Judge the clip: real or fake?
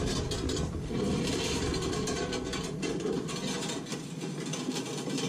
real